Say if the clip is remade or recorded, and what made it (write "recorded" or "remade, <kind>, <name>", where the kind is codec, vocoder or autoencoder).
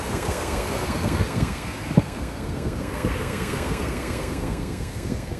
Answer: remade, codec, SNAC